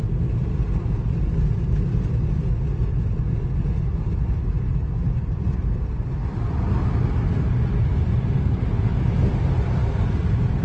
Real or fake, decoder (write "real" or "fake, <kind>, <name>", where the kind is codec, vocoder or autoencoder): real